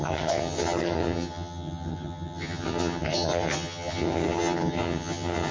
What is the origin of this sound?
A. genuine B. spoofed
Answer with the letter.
B